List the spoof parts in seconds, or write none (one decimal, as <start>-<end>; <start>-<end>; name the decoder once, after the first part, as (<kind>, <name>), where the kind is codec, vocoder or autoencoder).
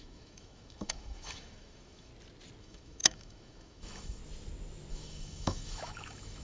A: 0.0-2.1 (autoencoder, DAC-VAE); 2.6-4.2; 4.9-6.4